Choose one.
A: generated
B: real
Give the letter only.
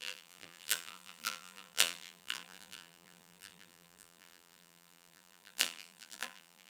A